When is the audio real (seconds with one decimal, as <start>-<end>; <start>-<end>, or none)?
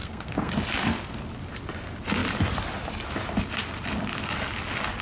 0.5-5.0